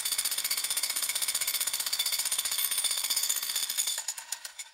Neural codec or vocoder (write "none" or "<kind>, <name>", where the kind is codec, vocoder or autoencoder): autoencoder, DAC-VAE